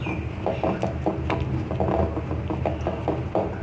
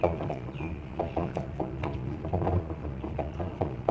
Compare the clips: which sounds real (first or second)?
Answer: first